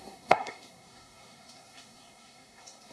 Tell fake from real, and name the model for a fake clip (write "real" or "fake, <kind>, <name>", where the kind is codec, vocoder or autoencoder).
fake, codec, SNAC